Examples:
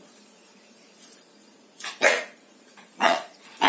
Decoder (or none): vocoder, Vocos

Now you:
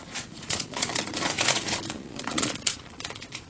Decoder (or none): vocoder, Vocos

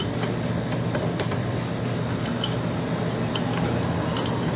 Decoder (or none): none